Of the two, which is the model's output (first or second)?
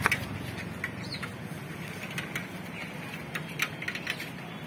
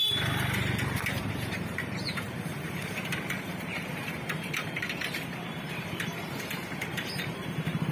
second